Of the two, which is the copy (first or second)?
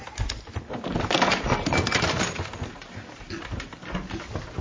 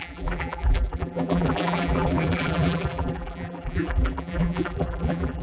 second